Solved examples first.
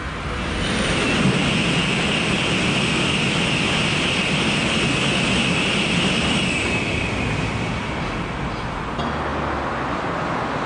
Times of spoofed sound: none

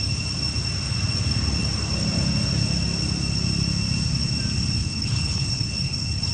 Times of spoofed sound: 4.8-6.3

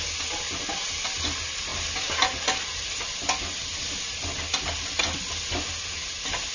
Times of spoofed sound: none